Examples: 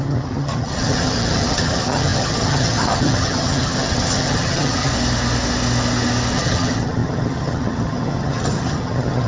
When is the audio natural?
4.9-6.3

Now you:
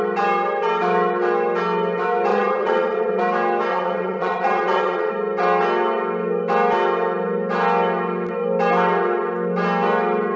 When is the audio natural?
0.0-2.3; 3.2-3.7; 5.1-10.4

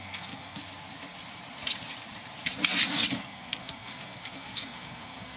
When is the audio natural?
0.6-3.1

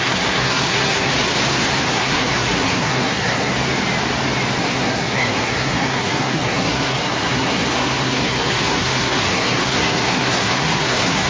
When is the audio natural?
1.1-1.9; 3.5-4.6

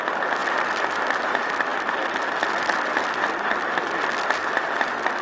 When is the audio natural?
0.0-5.2